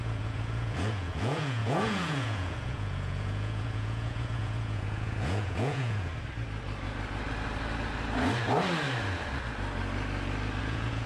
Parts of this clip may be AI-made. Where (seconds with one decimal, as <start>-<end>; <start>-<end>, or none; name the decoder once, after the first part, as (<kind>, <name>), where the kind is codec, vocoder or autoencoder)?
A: 0.0-6.1 (vocoder, Vocos); 10.6-11.1